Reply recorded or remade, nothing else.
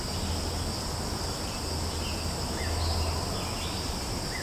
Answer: recorded